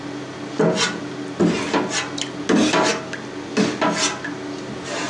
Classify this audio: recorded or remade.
recorded